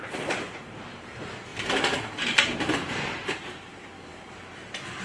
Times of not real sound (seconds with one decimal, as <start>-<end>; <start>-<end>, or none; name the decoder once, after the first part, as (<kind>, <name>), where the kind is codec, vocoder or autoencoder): 0.0-1.5 (vocoder, BigVGAN v2); 2.7-4.1